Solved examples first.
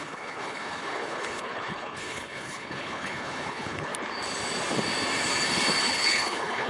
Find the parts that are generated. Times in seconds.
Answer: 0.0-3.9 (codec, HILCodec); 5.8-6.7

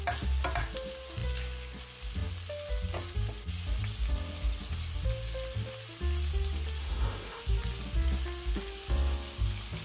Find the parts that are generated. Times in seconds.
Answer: 6.8-7.4 (autoencoder, DAC-VAE)

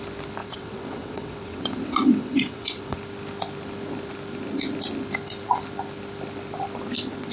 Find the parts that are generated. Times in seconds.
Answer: 0.4-3.0 (vocoder, WaveNeXt)

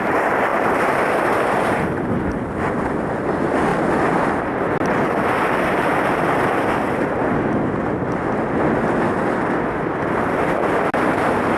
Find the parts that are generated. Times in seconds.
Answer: none